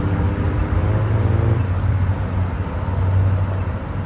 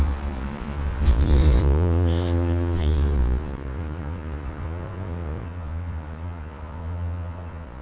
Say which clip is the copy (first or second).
second